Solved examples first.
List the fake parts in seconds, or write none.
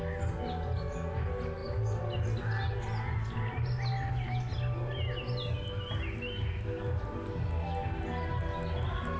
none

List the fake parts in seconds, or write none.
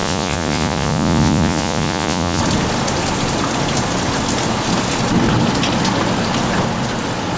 0.0-2.4 (vocoder, Vocos)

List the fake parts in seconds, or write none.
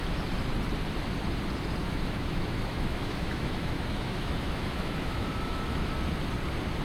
1.8-5.9 (autoencoder, DAC-VAE)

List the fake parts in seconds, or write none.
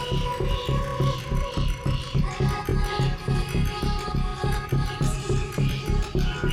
0.9-2.2 (vocoder, BigVGAN v2); 4.3-6.5